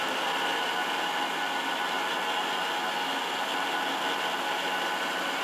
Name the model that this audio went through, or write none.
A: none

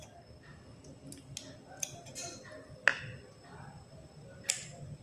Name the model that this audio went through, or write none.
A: none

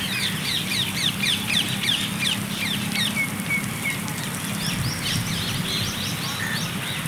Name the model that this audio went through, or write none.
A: vocoder, BigVGAN v2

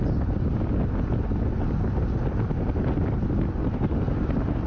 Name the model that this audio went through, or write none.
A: none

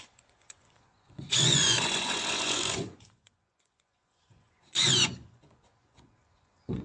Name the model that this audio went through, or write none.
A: vocoder, Vocos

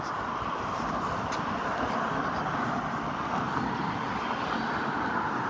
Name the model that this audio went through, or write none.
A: none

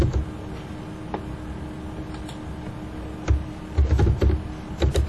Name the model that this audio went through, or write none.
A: none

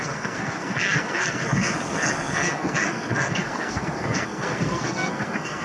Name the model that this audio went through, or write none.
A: codec, SNAC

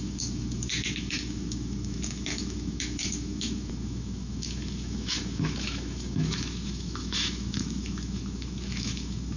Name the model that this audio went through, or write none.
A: autoencoder, DAC-VAE